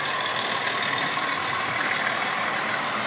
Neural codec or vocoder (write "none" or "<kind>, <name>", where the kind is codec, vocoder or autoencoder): none